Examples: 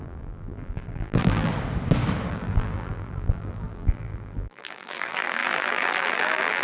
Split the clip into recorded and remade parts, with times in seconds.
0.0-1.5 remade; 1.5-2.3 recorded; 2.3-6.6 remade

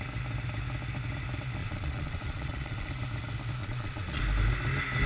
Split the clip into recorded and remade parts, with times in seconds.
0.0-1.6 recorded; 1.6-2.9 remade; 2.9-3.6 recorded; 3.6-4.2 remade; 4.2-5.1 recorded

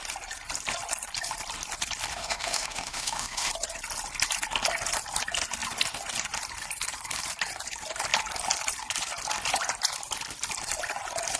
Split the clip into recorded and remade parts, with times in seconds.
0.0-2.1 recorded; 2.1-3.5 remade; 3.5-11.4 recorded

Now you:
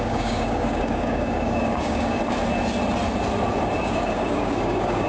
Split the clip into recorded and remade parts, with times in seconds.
0.0-2.2 remade; 2.2-3.8 recorded; 3.8-5.1 remade

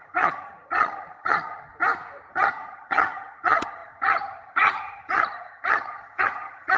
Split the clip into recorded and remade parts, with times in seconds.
0.0-1.7 remade; 1.7-2.3 recorded; 2.3-6.8 remade

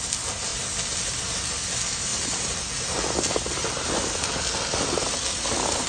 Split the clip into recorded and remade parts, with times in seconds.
0.0-5.9 recorded

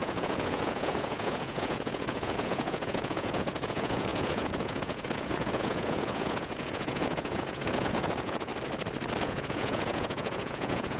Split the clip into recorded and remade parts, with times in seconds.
0.0-8.5 remade; 8.5-9.2 recorded; 9.2-11.0 remade